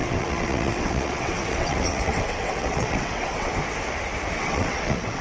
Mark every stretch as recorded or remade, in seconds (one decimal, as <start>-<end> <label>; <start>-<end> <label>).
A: 0.0-3.5 remade; 3.5-4.3 recorded; 4.3-5.2 remade